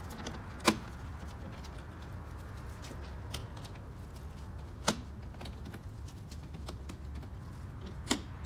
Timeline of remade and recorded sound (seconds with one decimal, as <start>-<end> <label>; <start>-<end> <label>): 0.0-8.5 recorded